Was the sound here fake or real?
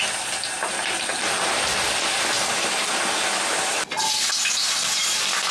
real